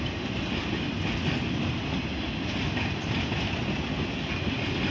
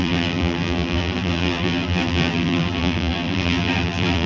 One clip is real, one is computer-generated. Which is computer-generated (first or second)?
second